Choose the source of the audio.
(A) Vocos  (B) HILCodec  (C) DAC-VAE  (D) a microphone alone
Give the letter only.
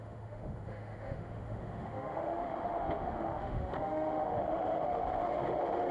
C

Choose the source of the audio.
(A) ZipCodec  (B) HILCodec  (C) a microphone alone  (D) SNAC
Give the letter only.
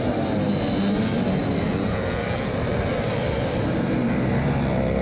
C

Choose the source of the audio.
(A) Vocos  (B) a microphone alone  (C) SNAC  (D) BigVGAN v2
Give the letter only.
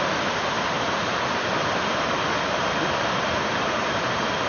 B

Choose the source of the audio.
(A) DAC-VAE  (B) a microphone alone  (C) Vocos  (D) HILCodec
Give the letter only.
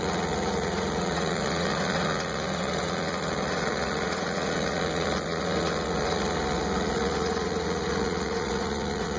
C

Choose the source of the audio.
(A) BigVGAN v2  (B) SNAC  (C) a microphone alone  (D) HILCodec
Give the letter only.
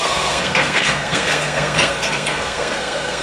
B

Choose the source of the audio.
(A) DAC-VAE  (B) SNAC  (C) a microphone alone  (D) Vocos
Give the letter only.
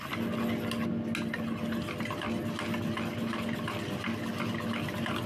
C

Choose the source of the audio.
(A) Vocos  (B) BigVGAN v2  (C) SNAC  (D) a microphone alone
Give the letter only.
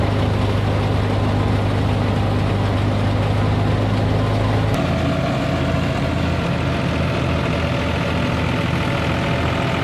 D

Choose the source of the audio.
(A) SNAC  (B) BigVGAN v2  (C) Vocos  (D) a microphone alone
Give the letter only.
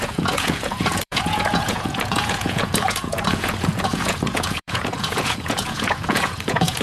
C